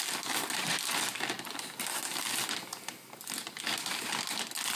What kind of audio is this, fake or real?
real